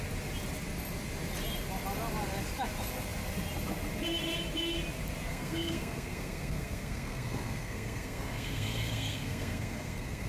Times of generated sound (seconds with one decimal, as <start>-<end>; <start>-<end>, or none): 5.3-10.3

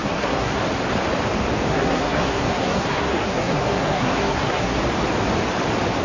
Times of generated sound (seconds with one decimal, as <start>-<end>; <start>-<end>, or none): 0.0-0.6; 1.7-4.8